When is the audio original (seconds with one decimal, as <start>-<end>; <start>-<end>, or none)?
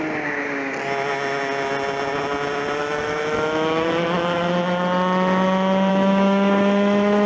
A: 0.0-2.8; 4.5-5.9